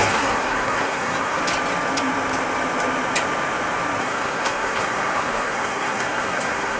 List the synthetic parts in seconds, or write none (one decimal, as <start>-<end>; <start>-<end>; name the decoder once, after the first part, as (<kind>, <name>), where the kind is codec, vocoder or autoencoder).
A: 0.0-1.4 (codec, SNAC); 4.0-6.8